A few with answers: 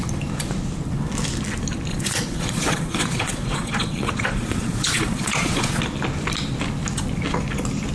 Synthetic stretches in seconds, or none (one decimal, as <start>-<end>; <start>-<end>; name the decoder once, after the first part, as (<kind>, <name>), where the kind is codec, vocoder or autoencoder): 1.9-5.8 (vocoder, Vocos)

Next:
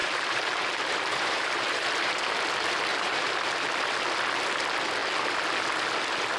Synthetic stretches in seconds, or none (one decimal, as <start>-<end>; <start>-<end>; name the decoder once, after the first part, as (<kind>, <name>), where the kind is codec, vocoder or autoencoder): 0.0-2.2 (vocoder, BigVGAN v2); 2.9-3.7

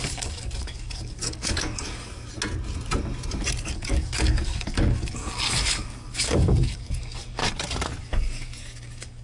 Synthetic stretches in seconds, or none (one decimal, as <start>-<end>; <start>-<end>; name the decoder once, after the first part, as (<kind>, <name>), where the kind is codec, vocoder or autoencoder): 0.0-2.3 (codec, DAC); 3.6-7.4; 8.0-9.2

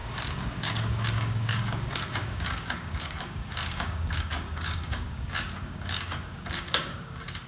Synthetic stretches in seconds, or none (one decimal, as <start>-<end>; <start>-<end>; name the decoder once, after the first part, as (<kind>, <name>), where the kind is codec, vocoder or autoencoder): 0.0-7.5 (codec, DAC)

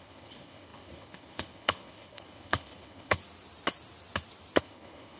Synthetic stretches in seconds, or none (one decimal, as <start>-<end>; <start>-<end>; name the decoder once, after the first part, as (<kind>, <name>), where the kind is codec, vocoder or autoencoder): 0.0-3.2 (codec, HILCodec); 4.6-5.2